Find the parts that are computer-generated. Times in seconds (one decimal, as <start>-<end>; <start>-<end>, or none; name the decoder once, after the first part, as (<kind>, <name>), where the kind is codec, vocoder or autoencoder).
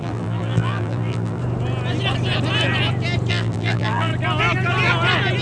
0.0-1.4 (vocoder, BigVGAN v2); 3.3-4.1